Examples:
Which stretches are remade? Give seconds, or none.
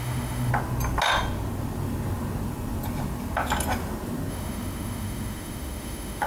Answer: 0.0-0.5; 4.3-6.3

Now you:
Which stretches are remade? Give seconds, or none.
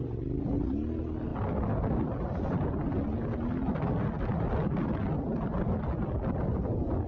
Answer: none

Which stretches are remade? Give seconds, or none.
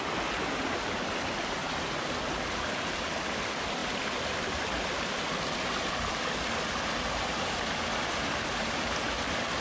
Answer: none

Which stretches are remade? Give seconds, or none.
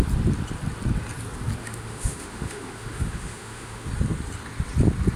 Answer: 1.6-3.9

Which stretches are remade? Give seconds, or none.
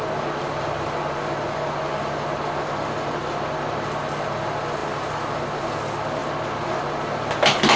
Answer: none